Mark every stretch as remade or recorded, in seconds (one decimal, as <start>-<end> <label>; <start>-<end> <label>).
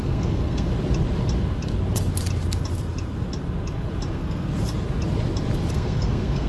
0.0-0.7 remade; 0.7-4.1 recorded; 4.1-4.5 remade; 4.5-5.7 recorded; 5.7-6.5 remade